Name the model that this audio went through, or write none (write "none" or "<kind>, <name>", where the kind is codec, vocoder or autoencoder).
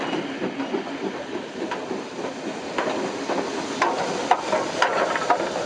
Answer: none